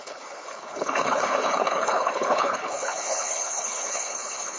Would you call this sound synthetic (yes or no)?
yes